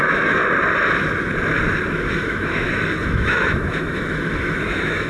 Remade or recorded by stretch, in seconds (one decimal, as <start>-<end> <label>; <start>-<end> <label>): 0.0-0.4 remade; 0.4-1.9 recorded; 1.9-5.1 remade